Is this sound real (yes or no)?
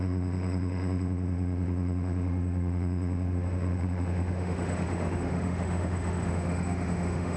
no